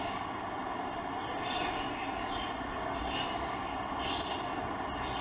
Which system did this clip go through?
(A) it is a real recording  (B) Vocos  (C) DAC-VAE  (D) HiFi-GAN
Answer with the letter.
A